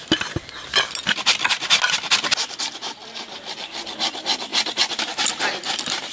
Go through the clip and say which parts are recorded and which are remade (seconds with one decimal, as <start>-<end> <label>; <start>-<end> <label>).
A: 0.0-6.1 recorded